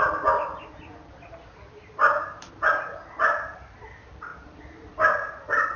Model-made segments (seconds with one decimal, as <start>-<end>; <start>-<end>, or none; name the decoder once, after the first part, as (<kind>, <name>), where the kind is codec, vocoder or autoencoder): none